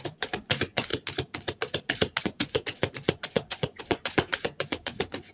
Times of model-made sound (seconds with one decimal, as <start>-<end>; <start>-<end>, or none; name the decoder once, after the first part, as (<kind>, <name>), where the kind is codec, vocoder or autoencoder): 0.0-0.9 (vocoder, Vocos); 2.2-5.3

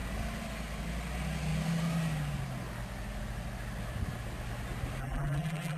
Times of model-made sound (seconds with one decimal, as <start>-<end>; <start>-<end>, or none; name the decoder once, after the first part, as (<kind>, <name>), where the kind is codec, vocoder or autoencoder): 5.0-5.8 (vocoder, BigVGAN v2)

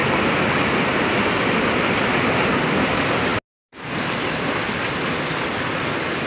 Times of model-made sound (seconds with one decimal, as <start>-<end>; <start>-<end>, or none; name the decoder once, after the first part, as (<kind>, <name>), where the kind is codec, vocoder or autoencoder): none

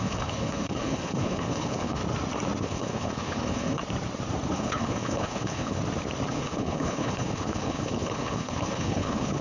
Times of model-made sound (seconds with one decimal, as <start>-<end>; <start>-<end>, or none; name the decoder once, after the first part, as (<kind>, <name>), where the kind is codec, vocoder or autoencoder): 0.0-2.0 (codec, HILCodec); 2.6-3.8; 4.5-5.8; 6.3-9.4